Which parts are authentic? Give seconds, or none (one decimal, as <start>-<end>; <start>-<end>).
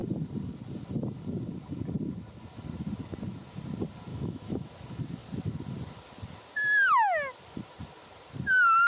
0.0-4.1; 4.7-8.9